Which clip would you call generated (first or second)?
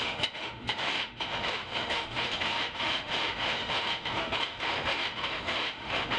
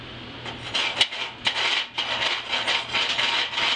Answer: first